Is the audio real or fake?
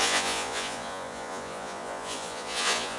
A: fake